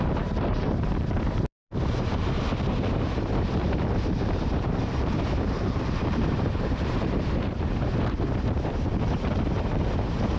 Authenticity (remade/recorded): remade